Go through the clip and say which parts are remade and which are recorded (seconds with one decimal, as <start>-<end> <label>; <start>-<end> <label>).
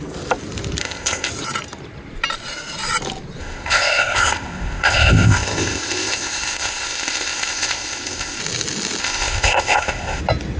0.0-0.8 recorded; 0.8-1.3 remade; 1.3-3.4 recorded; 3.4-8.4 remade; 8.4-9.0 recorded; 9.0-10.2 remade; 10.2-10.6 recorded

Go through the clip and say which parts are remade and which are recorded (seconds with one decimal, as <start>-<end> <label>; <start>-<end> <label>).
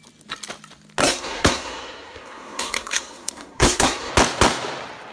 0.0-1.0 recorded; 1.0-4.1 remade; 4.1-5.1 recorded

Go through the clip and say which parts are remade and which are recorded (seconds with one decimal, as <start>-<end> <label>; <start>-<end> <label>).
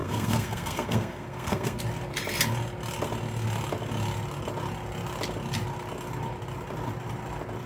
0.0-1.8 remade; 1.8-7.7 recorded